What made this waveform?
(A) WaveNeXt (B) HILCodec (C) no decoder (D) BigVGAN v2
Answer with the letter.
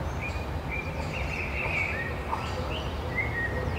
D